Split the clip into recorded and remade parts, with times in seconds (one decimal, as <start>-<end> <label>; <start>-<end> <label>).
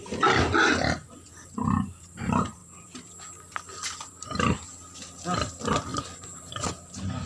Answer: 0.0-7.3 recorded